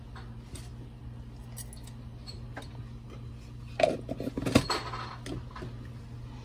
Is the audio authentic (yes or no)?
yes